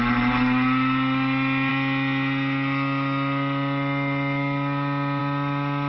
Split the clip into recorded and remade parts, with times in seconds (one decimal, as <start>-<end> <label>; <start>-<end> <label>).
0.0-5.9 recorded